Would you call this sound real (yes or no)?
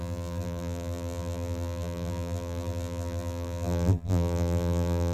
no